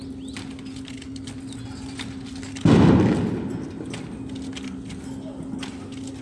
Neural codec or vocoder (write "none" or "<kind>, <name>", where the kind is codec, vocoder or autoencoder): none